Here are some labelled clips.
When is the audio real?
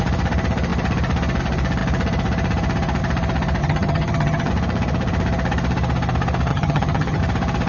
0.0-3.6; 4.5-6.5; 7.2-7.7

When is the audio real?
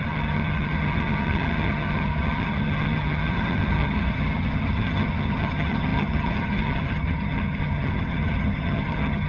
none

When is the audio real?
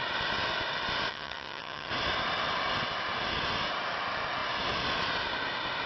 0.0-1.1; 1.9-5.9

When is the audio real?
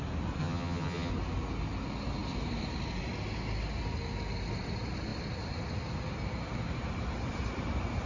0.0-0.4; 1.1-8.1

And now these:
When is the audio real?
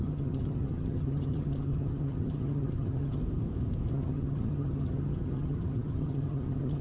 3.2-3.9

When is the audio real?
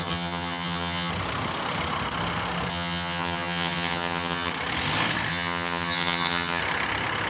1.1-2.7; 4.5-5.3; 6.6-7.3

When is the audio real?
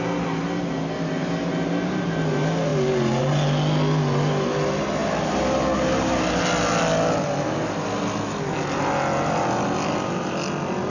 0.0-10.9